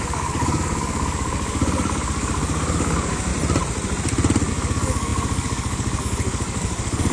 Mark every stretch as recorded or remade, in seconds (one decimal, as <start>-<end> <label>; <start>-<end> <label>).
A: 0.0-3.3 remade; 3.3-4.5 recorded; 4.5-7.1 remade